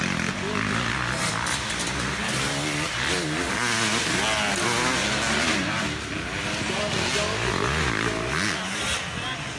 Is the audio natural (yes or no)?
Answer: yes